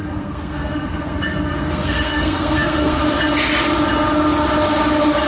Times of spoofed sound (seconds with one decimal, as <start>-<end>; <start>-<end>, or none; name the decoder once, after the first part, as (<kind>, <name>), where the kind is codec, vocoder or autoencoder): 0.0-3.0 (codec, SNAC)